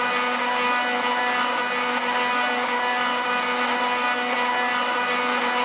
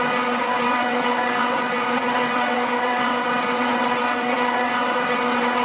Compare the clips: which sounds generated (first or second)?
second